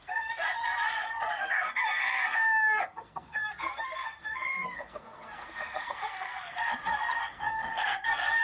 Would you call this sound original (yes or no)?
no